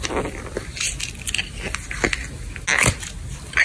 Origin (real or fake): real